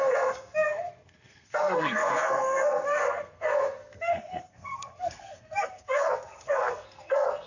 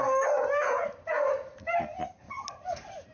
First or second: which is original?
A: second